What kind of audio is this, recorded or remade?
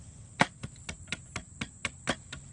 recorded